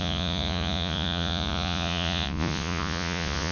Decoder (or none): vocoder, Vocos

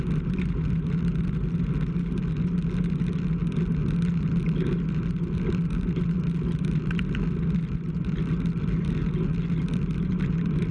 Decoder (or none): none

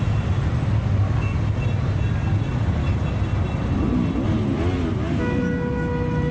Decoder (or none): none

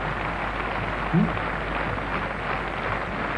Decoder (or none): none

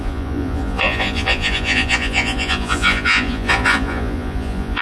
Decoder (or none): vocoder, Vocos